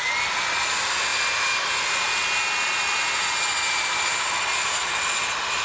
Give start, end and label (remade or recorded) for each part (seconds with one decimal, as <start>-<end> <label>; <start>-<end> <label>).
0.0-5.6 recorded